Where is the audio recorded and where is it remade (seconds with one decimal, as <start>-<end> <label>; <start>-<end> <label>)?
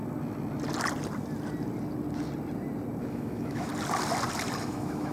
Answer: 0.0-3.1 recorded; 3.1-3.7 remade; 3.7-4.6 recorded; 4.6-5.1 remade